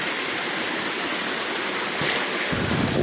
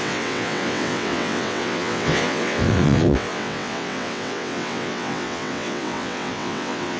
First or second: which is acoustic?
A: first